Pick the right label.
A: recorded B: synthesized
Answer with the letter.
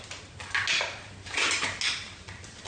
A